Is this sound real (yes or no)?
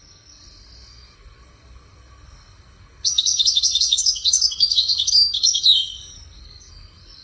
no